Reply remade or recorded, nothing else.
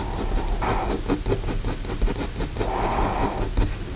recorded